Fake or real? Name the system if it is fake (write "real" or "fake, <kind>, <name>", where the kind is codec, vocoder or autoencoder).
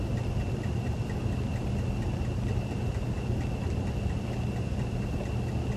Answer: real